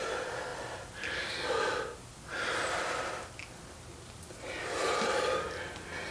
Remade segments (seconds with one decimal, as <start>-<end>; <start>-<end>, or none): none